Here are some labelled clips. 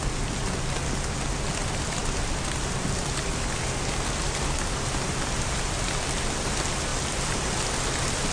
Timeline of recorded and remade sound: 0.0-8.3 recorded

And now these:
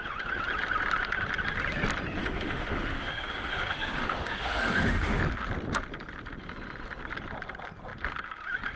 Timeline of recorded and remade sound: 0.0-2.2 recorded; 2.2-5.2 remade; 5.2-8.8 recorded

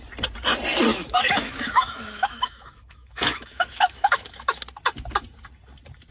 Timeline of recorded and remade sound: 0.0-0.9 recorded; 0.9-4.6 remade; 4.6-6.1 recorded